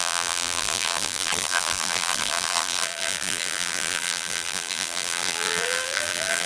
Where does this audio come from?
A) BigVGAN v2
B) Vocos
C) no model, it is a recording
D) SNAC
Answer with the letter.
A